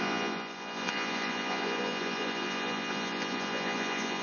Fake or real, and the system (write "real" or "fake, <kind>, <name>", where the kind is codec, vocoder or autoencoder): fake, vocoder, Vocos